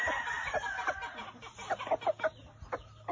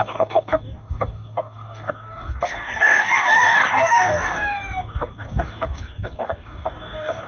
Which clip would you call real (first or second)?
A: first